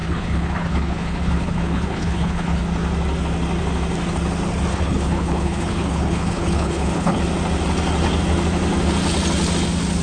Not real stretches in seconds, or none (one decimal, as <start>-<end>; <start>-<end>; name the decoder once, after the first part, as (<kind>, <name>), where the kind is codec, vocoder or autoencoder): 0.0-2.6 (codec, HILCodec); 4.7-7.2